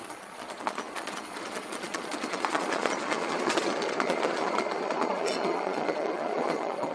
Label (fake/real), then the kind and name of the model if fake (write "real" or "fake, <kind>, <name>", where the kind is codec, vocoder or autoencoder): fake, vocoder, Vocos